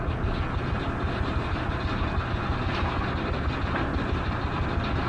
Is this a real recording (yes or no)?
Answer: yes